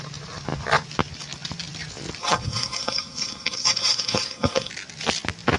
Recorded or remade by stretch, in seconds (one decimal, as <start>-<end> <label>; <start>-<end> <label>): 0.0-2.2 recorded; 2.2-4.7 remade; 4.7-5.6 recorded